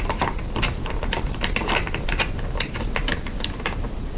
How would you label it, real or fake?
fake